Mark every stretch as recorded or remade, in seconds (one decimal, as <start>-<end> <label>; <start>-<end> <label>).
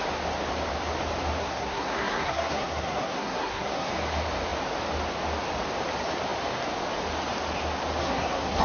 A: 0.0-1.4 recorded; 1.4-3.9 remade; 3.9-8.0 recorded; 8.0-8.6 remade